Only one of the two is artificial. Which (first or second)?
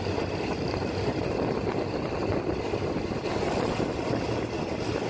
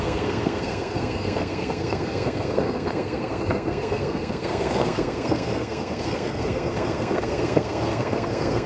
second